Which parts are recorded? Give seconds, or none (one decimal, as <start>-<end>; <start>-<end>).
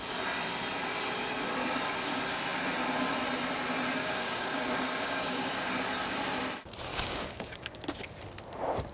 0.0-4.0; 5.5-6.9; 7.8-8.9